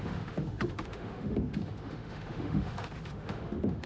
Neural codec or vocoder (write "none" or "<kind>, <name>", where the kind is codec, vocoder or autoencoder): autoencoder, DAC-VAE